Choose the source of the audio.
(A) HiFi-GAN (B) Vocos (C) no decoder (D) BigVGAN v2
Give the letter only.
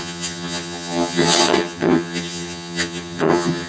A